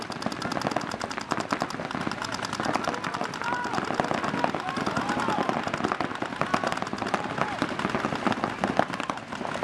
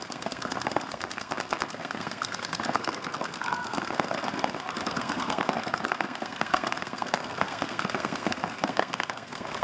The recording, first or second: first